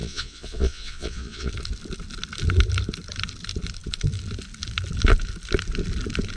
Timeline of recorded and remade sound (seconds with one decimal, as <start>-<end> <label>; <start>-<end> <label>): 0.0-1.5 remade; 1.5-6.4 recorded